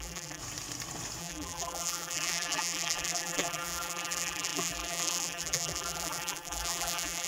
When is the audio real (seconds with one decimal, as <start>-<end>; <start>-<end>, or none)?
0.4-1.2